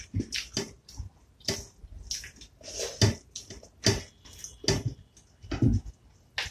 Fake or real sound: real